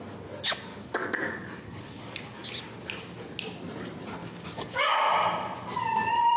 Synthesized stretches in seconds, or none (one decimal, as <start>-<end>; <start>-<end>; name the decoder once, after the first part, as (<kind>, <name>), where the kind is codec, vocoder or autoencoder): 0.7-2.5 (codec, DAC); 4.2-5.1